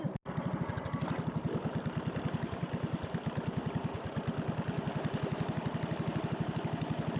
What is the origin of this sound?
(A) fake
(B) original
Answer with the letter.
B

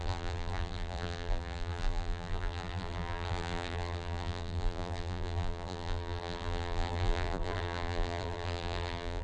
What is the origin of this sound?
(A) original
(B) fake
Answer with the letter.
B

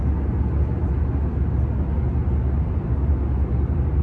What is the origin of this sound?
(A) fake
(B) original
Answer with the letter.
B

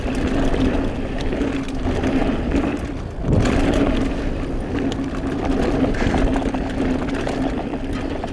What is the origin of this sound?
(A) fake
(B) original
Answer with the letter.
A